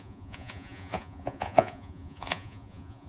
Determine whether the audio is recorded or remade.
remade